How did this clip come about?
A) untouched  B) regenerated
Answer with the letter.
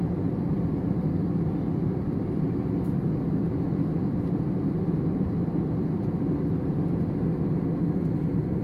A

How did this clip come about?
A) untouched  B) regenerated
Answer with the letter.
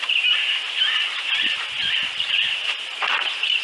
B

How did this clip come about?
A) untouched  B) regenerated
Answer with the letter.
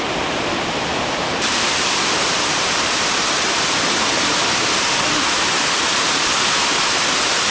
B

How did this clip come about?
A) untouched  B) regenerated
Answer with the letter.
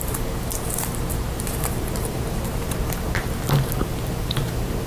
B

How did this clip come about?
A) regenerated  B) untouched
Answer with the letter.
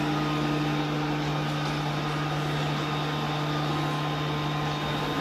B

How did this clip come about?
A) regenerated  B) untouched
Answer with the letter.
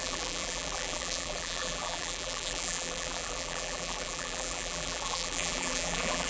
A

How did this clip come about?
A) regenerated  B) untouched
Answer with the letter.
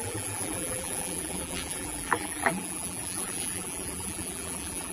A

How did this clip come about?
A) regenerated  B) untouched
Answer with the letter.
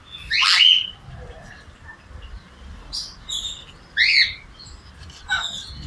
B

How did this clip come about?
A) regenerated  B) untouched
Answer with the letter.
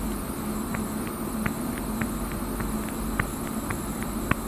B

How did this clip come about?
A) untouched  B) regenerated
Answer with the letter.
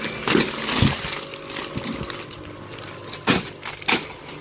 A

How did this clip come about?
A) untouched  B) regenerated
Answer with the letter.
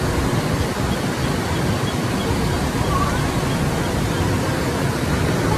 A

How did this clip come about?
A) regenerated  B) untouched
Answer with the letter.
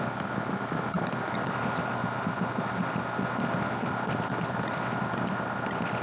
B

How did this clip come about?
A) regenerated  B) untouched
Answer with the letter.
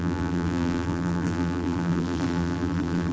A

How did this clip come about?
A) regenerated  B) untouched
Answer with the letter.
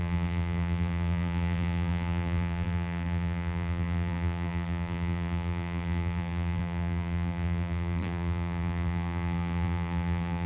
A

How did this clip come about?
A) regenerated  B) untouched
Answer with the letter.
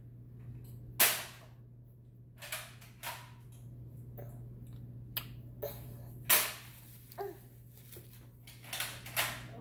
B